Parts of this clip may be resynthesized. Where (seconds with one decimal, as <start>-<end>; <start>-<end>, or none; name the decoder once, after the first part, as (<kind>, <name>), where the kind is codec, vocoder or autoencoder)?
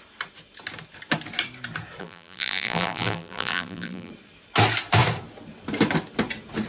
2.0-4.1 (vocoder, BigVGAN v2)